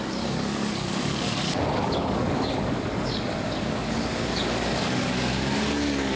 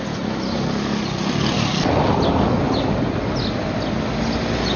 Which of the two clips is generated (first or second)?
first